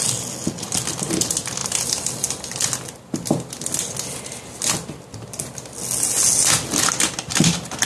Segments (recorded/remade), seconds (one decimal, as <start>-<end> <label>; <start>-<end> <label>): 0.0-7.9 recorded